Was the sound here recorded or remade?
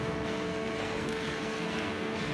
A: remade